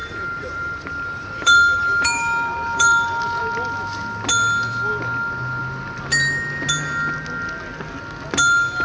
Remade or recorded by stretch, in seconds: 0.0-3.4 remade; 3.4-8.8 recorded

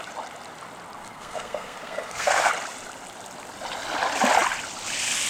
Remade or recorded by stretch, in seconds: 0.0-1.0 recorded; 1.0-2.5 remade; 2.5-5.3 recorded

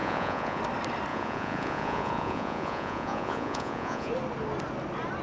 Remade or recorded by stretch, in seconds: 0.0-0.6 remade; 0.6-1.1 recorded; 1.1-4.1 remade; 4.1-5.2 recorded